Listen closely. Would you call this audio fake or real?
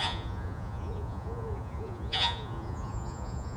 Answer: fake